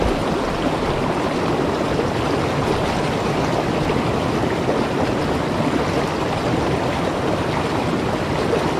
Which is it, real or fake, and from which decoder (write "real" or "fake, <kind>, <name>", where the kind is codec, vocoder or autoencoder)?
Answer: real